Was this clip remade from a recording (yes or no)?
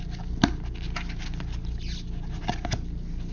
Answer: no